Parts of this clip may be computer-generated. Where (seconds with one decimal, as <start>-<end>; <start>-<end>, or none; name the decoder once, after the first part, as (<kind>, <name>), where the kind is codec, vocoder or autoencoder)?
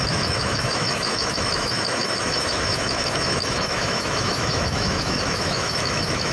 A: 0.0-6.3 (autoencoder, DAC-VAE)